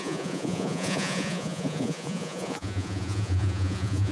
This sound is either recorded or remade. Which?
remade